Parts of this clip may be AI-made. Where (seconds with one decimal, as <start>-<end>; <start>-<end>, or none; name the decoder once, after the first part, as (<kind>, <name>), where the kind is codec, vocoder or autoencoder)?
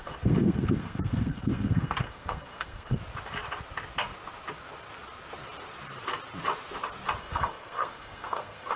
0.0-3.0 (codec, SNAC); 7.2-8.8